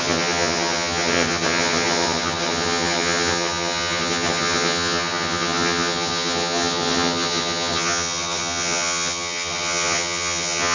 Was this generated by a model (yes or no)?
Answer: yes